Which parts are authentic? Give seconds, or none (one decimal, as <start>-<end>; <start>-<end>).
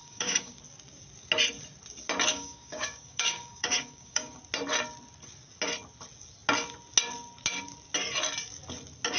0.6-2.3; 4.4-9.2